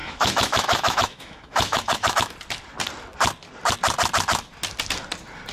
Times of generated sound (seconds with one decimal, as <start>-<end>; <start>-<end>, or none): 0.0-2.3